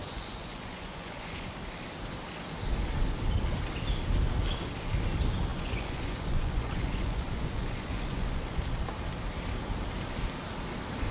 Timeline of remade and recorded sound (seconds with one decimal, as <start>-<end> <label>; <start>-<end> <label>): 0.0-1.5 remade; 1.5-5.5 recorded; 5.5-8.6 remade; 8.6-11.1 recorded